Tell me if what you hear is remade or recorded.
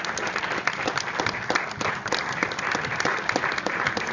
recorded